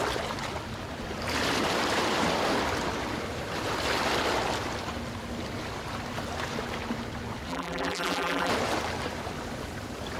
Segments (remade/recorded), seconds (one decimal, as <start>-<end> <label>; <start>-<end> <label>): 0.0-7.5 recorded; 7.5-8.5 remade; 8.5-10.2 recorded